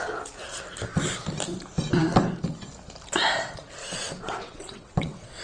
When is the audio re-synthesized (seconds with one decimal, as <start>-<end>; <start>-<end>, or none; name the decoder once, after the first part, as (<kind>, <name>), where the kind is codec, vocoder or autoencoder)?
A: 3.8-5.4 (vocoder, WaveNeXt)